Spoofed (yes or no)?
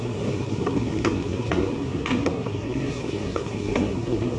yes